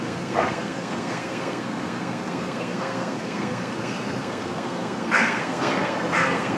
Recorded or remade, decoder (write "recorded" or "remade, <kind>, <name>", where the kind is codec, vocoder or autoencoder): remade, codec, SNAC